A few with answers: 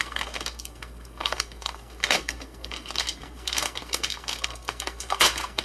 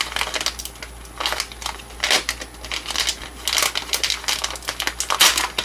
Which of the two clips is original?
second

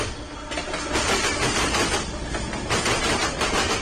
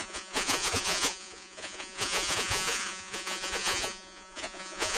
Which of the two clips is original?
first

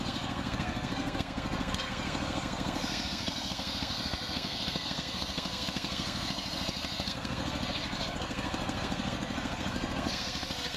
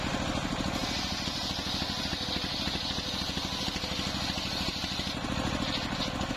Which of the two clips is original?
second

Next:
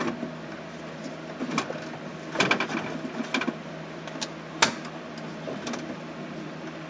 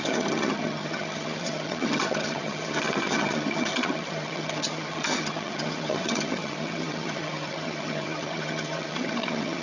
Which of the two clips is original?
first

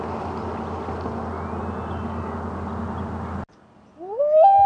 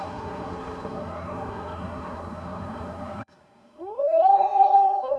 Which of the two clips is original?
first